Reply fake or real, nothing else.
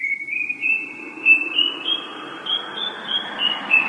fake